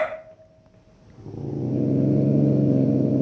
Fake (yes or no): no